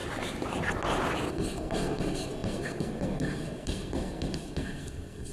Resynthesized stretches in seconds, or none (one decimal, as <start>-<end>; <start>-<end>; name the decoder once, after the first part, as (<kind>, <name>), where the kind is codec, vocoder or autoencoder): 1.3-5.3 (codec, SNAC)